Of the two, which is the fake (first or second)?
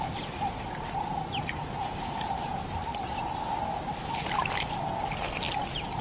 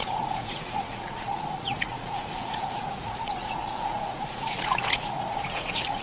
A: second